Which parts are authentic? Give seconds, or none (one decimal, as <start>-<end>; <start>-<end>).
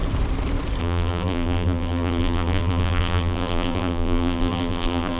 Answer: 0.0-0.8